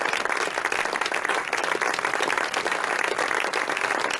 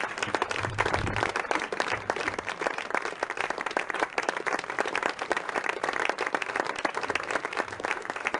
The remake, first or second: second